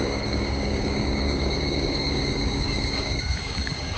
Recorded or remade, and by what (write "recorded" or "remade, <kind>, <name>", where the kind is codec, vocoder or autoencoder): remade, codec, DAC